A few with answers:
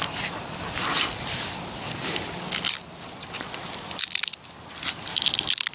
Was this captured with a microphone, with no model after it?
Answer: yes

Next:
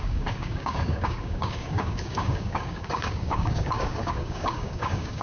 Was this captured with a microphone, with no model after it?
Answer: no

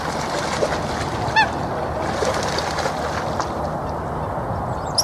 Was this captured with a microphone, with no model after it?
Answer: yes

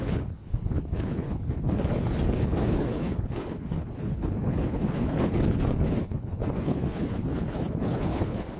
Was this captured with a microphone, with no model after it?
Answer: no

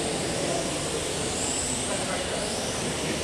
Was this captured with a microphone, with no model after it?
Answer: no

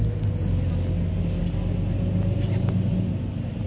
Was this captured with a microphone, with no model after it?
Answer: yes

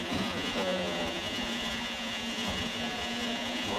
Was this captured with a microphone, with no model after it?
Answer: no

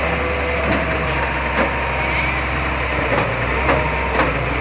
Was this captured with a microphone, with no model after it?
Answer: yes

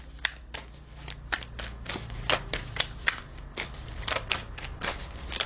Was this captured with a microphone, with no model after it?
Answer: yes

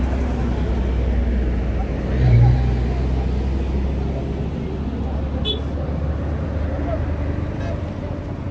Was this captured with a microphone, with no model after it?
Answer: yes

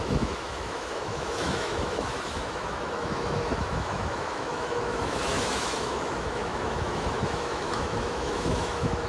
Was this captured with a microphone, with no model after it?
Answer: no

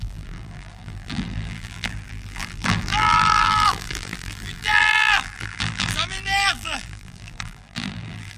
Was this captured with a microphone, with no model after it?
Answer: no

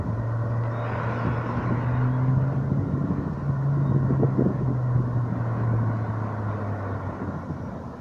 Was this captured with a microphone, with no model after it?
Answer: yes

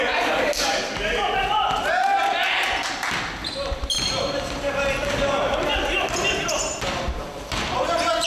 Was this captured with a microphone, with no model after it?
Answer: yes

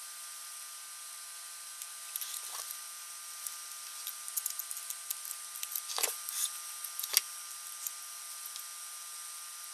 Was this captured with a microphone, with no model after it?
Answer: yes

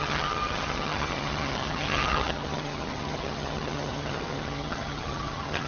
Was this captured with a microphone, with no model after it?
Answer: no